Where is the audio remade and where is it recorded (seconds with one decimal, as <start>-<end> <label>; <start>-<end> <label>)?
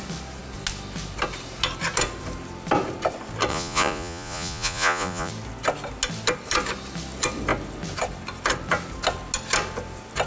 0.0-3.5 recorded; 3.5-5.3 remade; 5.3-10.3 recorded